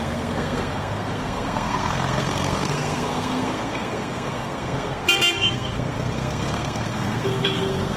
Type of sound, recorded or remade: remade